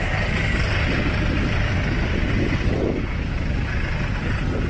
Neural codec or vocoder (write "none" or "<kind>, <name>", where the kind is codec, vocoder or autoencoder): none